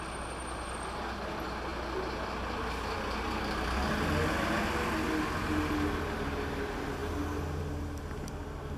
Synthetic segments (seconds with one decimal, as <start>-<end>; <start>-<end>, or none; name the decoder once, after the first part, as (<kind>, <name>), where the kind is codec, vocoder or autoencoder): none